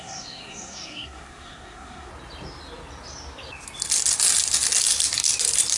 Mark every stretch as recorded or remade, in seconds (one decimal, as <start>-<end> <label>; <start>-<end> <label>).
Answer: 0.0-2.1 remade; 2.1-5.8 recorded